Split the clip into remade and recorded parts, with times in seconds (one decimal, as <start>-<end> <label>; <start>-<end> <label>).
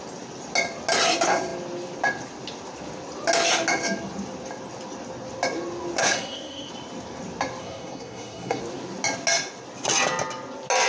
0.0-6.0 recorded; 6.0-6.7 remade; 6.7-7.6 recorded; 7.6-8.6 remade; 8.6-10.9 recorded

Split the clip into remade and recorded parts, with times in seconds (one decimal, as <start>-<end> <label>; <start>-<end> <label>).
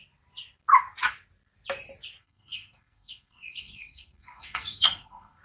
0.0-2.2 recorded; 2.2-5.4 remade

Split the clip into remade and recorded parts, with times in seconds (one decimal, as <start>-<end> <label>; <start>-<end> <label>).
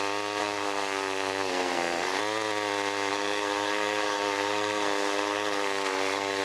0.0-0.4 recorded; 0.4-2.2 remade; 2.2-3.1 recorded; 3.1-6.4 remade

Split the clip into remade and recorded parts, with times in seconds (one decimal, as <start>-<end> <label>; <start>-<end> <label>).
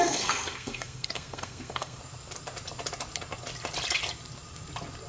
0.0-2.0 remade; 2.0-5.1 recorded